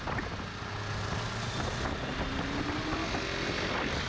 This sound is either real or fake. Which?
real